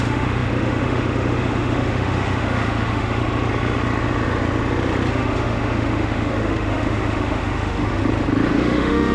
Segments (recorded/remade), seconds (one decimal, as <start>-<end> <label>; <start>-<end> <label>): 0.0-3.2 remade; 3.2-5.1 recorded; 5.1-8.0 remade; 8.0-8.5 recorded; 8.5-9.1 remade